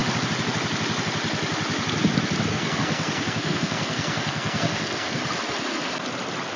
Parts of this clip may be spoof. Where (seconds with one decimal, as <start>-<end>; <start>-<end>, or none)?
2.5-5.2